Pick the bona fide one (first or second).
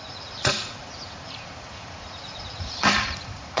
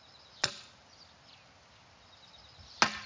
second